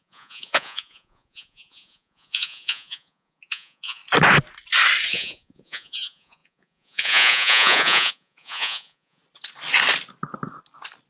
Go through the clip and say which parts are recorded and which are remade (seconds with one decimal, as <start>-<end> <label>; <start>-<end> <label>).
0.0-4.0 remade; 4.0-5.1 recorded; 5.1-9.2 remade; 9.2-11.1 recorded